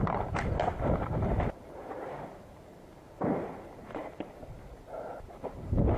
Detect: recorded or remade remade